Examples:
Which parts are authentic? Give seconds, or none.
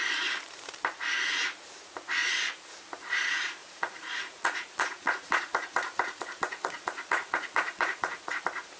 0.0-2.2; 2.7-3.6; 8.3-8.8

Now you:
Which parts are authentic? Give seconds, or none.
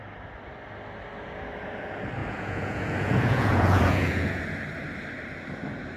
0.0-2.2; 4.4-6.0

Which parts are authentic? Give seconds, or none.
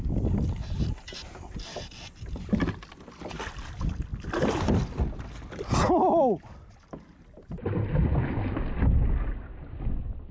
0.0-10.3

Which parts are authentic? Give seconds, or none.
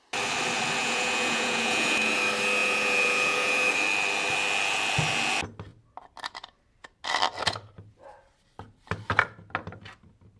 0.0-0.8; 2.2-2.6; 3.7-10.4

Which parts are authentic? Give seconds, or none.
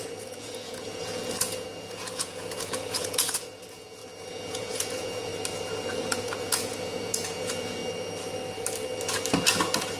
4.0-4.5; 5.3-5.9; 7.8-10.0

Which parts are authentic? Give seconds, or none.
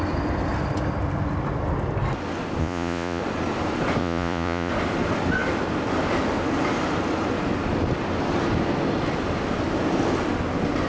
0.0-2.6; 3.2-4.0; 4.7-10.9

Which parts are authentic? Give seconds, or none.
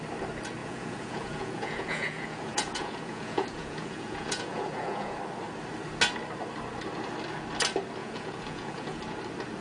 0.0-0.6; 5.2-8.0; 9.0-9.6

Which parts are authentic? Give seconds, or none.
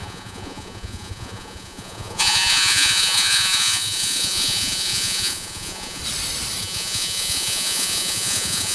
6.0-6.6